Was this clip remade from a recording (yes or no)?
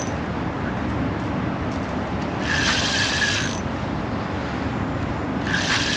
no